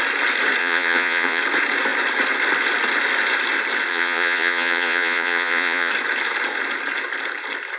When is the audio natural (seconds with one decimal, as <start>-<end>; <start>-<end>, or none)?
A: 0.0-0.6; 1.4-3.9; 5.9-7.8